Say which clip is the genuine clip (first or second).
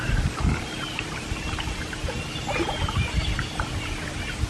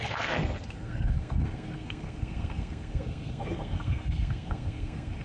first